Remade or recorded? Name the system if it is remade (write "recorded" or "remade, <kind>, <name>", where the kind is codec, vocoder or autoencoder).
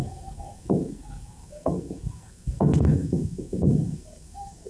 remade, codec, SNAC